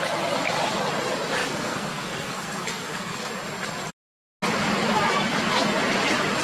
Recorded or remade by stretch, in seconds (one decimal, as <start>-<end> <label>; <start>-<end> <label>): 0.0-1.4 recorded; 1.4-3.3 remade; 3.3-6.4 recorded